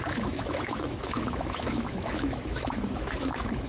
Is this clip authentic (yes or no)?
no